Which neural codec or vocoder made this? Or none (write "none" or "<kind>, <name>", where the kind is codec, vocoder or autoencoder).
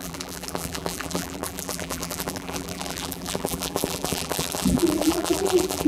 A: vocoder, BigVGAN v2